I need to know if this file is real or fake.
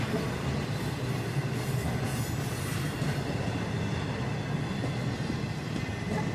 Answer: real